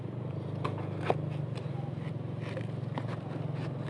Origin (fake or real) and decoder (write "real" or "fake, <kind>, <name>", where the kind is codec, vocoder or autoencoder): real